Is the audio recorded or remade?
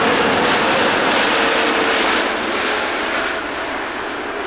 recorded